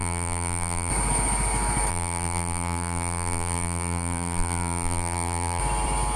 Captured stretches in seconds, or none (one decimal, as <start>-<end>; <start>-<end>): 0.9-1.9; 5.6-6.2